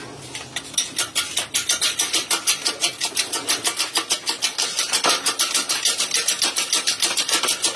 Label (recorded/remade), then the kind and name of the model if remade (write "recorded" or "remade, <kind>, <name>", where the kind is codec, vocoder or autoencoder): recorded